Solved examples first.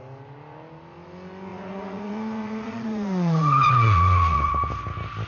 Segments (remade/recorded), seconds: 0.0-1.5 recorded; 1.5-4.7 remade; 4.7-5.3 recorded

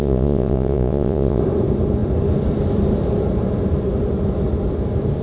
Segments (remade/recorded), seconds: 0.0-1.4 remade; 1.4-5.2 recorded